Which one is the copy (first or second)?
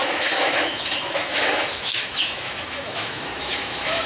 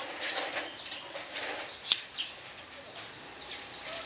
first